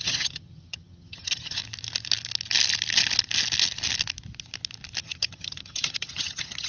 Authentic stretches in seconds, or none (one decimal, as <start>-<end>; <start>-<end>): 1.6-5.0